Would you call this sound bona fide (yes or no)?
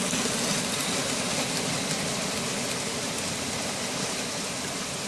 yes